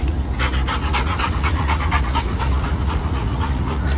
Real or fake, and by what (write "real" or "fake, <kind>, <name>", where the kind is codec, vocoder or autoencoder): fake, vocoder, Vocos